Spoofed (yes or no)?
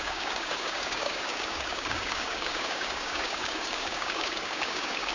yes